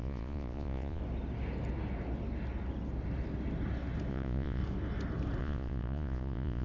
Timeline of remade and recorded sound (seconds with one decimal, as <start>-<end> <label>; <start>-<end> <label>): 0.0-1.0 remade; 1.0-4.1 recorded; 4.1-4.6 remade; 4.6-5.4 recorded; 5.4-6.6 remade

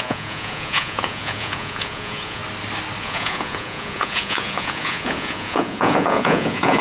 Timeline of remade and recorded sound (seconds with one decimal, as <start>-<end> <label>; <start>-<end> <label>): 0.0-2.4 remade; 2.4-3.0 recorded; 3.0-6.8 remade

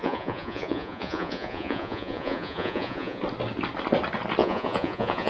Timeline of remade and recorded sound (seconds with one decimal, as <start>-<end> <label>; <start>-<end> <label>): 0.0-3.2 remade; 3.2-4.4 recorded; 4.4-5.3 remade